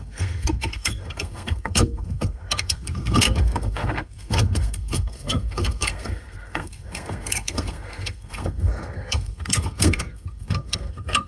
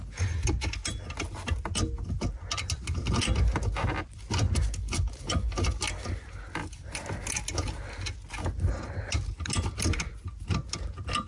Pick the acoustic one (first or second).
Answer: second